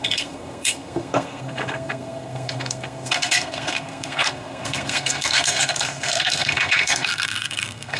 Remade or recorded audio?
remade